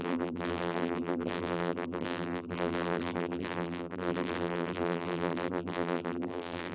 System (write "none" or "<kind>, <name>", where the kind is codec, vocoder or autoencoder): vocoder, BigVGAN v2